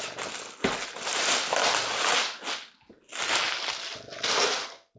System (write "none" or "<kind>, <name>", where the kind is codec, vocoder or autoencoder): none